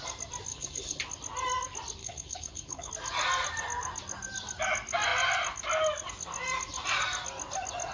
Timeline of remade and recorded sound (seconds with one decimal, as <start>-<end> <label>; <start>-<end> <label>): 0.0-0.5 recorded; 0.5-1.0 remade; 1.0-2.0 recorded; 2.0-2.9 remade; 2.9-7.9 recorded